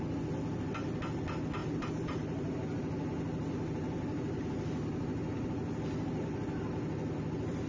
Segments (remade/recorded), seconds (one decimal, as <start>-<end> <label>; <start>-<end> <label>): 0.0-1.6 recorded; 1.6-2.5 remade; 2.5-7.7 recorded